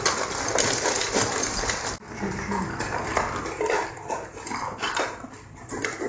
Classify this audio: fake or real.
real